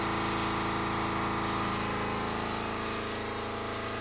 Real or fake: real